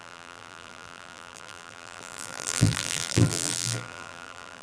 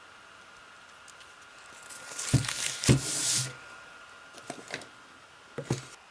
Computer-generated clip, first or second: first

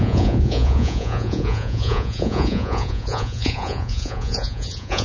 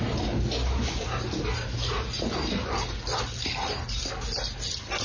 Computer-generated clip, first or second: first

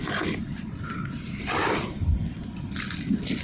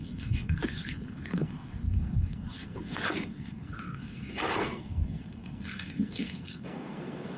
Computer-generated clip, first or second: second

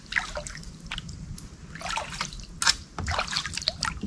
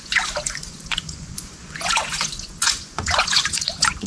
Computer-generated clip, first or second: second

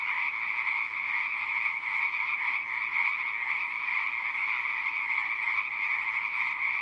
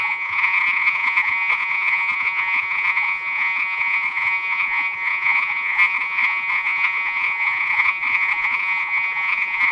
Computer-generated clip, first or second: second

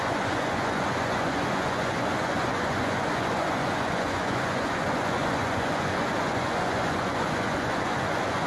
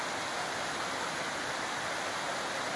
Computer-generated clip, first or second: first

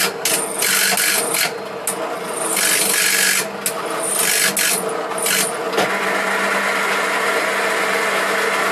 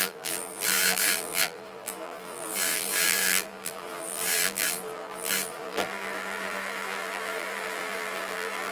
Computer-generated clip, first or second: second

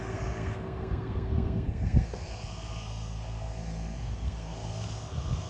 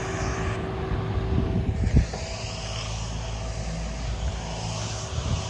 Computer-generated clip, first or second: first